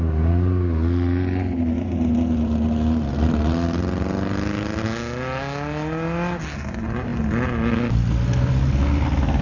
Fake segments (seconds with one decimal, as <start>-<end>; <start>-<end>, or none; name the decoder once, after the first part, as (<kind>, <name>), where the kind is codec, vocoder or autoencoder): none